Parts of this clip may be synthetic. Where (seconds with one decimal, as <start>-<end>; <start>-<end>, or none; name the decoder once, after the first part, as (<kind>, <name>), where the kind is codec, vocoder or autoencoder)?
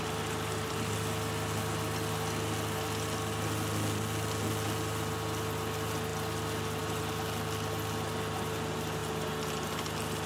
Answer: none